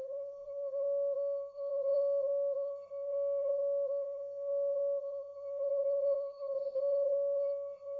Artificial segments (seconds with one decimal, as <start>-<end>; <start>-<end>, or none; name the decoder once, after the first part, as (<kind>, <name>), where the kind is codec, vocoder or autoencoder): 0.0-8.0 (codec, SNAC)